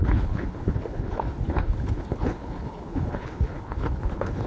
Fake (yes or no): yes